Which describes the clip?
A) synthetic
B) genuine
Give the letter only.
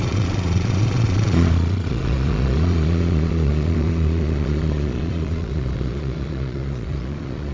A